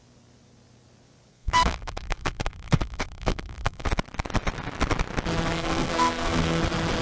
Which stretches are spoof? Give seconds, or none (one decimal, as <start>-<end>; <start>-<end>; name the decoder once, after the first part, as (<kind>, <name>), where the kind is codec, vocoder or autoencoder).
1.3-3.9 (codec, SNAC); 5.5-6.6